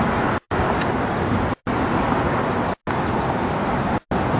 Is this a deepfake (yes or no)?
no